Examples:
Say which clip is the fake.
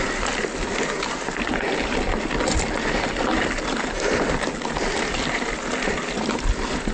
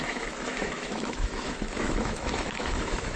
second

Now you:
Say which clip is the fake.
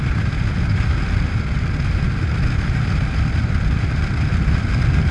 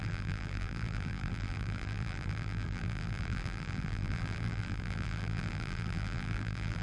second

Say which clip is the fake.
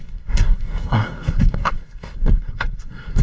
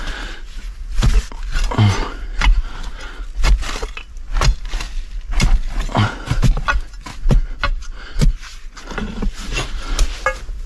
first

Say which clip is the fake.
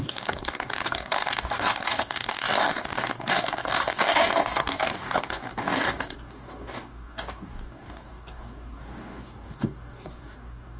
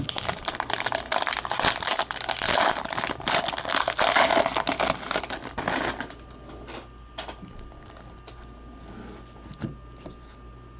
first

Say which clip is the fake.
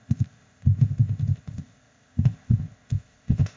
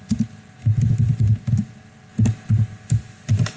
first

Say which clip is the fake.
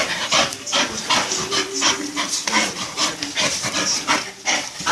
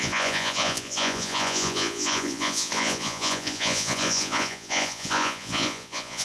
second